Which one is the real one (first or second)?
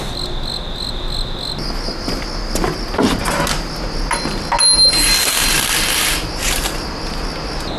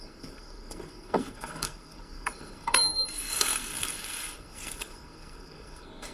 first